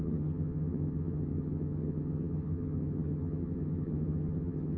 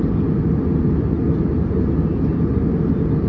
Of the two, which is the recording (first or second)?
second